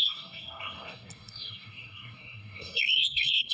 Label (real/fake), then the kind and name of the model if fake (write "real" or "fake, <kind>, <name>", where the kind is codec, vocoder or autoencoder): fake, codec, SNAC